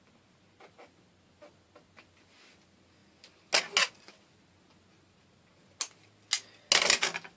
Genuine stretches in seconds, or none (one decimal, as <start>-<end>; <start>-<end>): 0.0-7.4